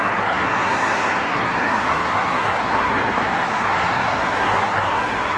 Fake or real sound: fake